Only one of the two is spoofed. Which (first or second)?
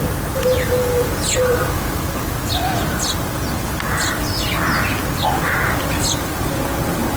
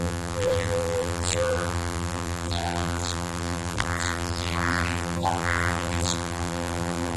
second